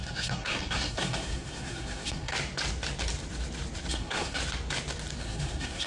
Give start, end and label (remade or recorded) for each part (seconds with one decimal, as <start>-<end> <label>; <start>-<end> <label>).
0.0-2.3 remade; 2.3-3.9 recorded; 3.9-4.4 remade; 4.4-5.2 recorded; 5.2-5.9 remade